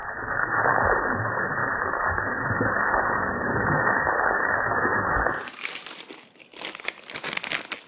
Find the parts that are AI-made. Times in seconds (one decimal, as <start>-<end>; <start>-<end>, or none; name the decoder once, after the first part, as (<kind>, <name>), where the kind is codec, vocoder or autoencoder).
0.0-0.7 (codec, DAC); 1.6-5.7